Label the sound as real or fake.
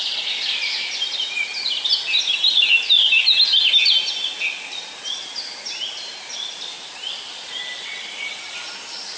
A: real